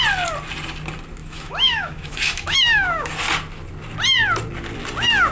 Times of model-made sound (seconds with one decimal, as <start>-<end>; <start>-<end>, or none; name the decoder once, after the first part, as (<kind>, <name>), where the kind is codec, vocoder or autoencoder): 1.2-3.1 (autoencoder, DAC-VAE)